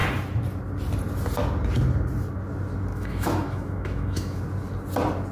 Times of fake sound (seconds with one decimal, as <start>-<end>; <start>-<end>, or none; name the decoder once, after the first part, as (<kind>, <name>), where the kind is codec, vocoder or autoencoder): 2.9-4.4 (autoencoder, DAC-VAE)